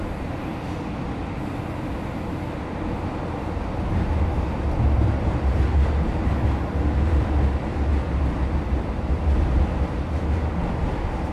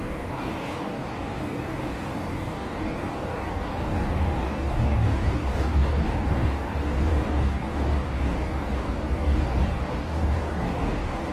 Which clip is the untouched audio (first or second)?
first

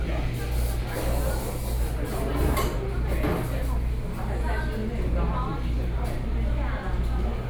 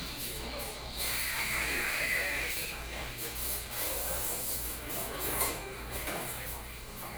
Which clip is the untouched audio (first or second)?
first